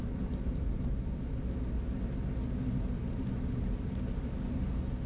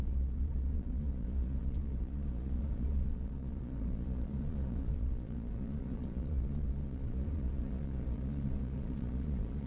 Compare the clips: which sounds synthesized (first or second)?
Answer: second